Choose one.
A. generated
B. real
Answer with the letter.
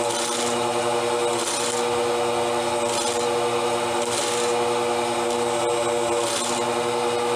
B